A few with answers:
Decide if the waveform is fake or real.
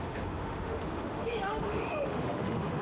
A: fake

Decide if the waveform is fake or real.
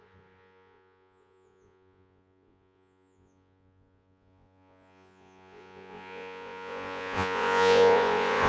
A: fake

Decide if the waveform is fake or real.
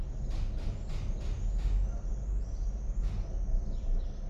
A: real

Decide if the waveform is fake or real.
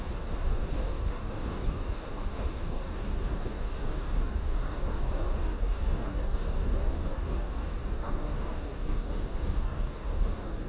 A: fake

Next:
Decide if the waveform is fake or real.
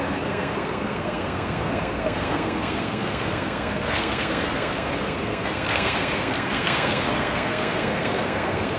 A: fake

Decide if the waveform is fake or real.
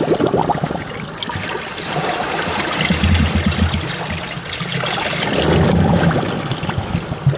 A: real